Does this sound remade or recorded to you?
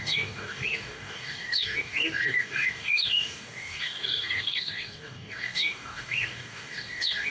remade